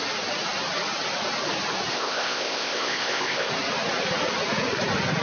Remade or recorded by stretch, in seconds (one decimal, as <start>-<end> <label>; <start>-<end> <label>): 0.0-1.9 recorded; 1.9-3.5 remade; 3.5-5.2 recorded